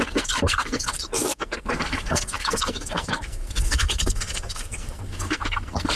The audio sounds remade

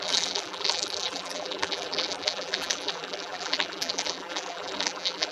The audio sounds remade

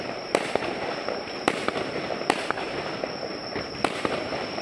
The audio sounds remade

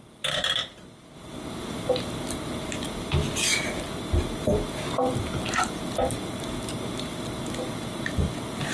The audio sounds recorded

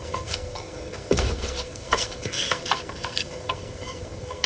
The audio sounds remade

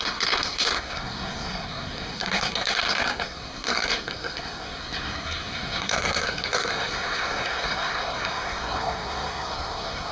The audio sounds remade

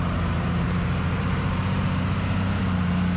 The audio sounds remade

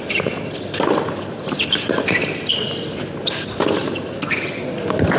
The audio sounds recorded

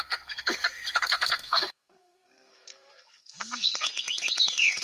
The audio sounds remade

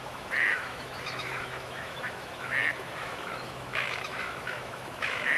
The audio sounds remade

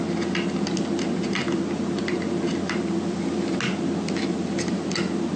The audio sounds recorded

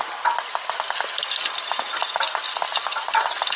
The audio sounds recorded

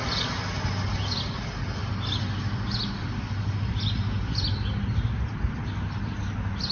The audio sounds recorded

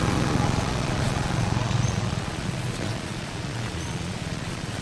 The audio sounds remade